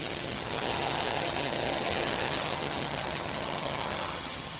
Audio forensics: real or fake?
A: fake